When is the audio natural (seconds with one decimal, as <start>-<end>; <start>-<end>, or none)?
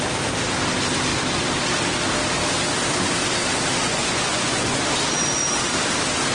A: 0.0-3.8; 4.8-6.3